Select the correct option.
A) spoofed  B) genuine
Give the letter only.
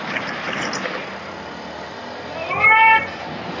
B